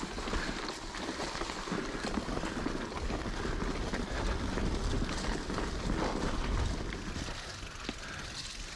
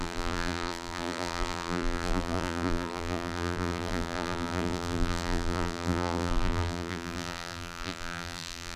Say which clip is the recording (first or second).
first